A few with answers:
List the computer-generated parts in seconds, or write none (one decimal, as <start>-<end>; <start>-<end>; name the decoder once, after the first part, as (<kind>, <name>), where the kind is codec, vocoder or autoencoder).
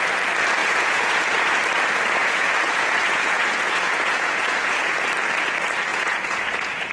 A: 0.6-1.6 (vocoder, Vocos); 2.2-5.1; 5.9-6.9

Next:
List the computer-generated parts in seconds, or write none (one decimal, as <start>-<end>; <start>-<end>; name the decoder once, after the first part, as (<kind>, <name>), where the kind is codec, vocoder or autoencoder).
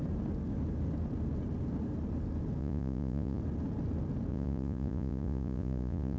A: 2.6-3.4 (vocoder, Vocos); 4.3-6.2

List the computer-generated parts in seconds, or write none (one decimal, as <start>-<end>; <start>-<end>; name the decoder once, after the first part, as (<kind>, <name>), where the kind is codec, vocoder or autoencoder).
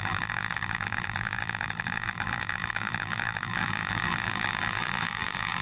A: 0.0-5.6 (vocoder, BigVGAN v2)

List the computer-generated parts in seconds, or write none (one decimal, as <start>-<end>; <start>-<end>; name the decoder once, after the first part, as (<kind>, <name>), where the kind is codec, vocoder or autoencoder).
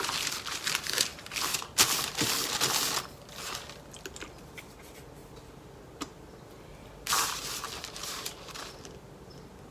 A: 8.0-9.1 (vocoder, BigVGAN v2)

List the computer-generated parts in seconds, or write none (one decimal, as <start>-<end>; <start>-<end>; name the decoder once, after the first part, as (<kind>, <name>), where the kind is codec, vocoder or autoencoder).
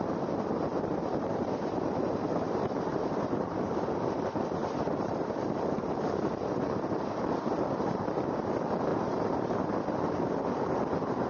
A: 0.7-3.9 (vocoder, BigVGAN v2); 4.6-5.8; 8.9-10.1